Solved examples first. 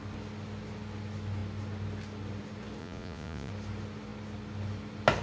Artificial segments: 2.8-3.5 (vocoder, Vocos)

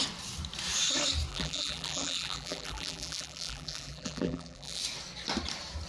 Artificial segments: 1.3-4.8 (vocoder, BigVGAN v2)

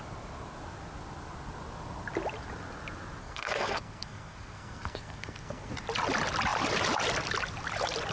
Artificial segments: 3.2-5.7 (codec, SNAC)